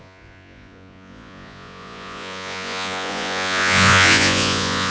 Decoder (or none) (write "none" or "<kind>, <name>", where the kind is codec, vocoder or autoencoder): vocoder, Vocos